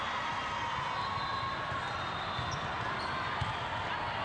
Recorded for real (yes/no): yes